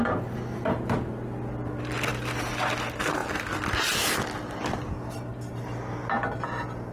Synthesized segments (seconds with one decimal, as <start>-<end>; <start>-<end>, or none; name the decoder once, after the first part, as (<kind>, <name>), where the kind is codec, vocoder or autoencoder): 2.1-2.8 (vocoder, BigVGAN v2)